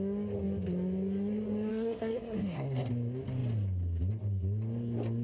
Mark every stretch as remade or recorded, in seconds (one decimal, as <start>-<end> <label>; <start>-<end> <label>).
0.0-1.7 recorded; 1.7-2.9 remade; 2.9-5.2 recorded